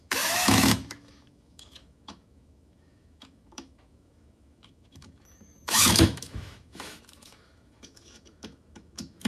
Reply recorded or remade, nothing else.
remade